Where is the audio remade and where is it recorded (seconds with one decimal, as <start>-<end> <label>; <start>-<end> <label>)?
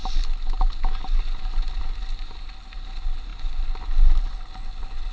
0.0-5.1 recorded